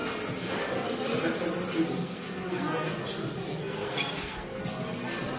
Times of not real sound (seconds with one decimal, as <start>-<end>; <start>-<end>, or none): 2.0-2.9; 3.5-4.6